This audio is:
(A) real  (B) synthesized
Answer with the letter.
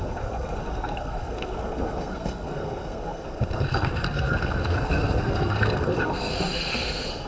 B